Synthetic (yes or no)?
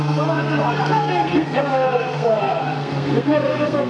yes